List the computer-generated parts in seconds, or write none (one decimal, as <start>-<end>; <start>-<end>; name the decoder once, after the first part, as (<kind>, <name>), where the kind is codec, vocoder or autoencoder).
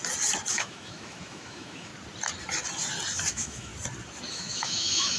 0.5-1.9 (autoencoder, DAC-VAE); 3.3-3.7; 4.3-5.2